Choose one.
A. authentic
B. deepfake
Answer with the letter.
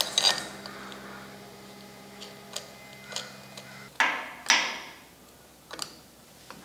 A